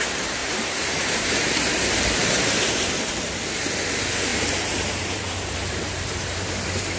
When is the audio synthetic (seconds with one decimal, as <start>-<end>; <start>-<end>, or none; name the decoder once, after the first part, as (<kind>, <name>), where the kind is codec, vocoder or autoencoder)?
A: 0.4-1.8 (vocoder, BigVGAN v2); 2.2-2.9; 4.3-6.4